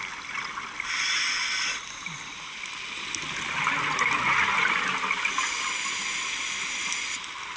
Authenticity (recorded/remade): recorded